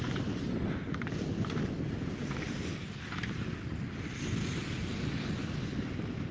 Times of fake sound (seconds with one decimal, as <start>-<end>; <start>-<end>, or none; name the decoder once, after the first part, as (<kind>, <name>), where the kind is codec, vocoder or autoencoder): none